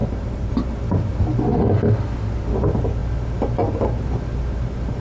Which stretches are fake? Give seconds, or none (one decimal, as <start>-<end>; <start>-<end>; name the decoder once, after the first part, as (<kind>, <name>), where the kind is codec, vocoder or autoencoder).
0.0-0.5 (vocoder, BigVGAN v2)